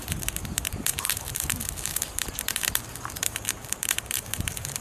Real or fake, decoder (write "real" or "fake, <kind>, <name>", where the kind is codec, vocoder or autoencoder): fake, vocoder, BigVGAN v2